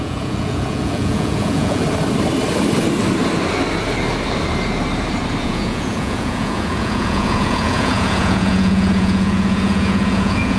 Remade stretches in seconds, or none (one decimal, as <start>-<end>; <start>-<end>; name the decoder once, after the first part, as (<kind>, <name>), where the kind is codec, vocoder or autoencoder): 0.0-1.8 (vocoder, Vocos); 5.4-10.6